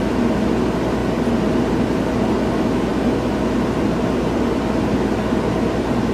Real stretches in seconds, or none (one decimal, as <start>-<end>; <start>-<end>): 0.0-6.1